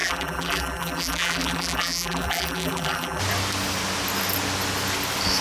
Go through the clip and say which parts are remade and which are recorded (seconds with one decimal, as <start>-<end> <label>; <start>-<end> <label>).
0.0-3.2 remade; 3.2-5.4 recorded